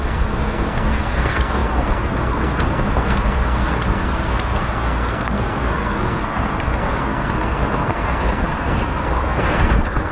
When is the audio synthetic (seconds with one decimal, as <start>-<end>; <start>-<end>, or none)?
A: 0.0-10.1